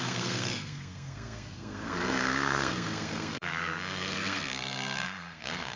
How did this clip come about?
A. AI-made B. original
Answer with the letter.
A